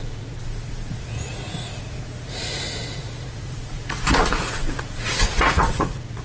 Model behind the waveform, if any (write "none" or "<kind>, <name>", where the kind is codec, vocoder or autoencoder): vocoder, Vocos